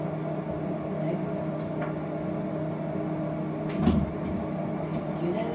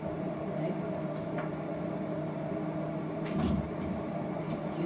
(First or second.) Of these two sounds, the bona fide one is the first